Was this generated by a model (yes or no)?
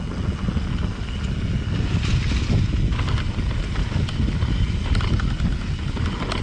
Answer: no